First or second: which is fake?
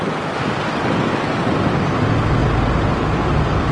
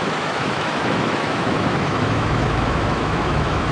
second